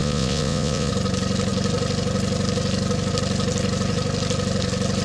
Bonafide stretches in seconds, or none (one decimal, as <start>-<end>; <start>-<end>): 0.9-5.0